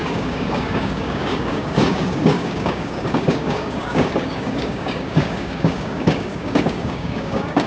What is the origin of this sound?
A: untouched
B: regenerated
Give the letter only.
B